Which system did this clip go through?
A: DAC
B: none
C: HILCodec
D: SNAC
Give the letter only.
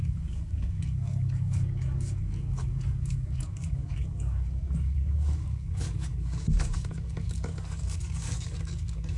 A